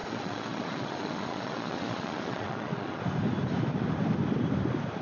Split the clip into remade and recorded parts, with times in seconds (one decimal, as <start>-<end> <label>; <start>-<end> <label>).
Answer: 0.0-3.0 remade; 3.0-5.0 recorded